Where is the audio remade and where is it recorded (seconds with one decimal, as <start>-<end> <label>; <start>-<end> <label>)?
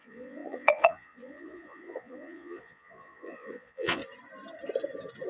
0.0-4.0 remade; 4.0-5.3 recorded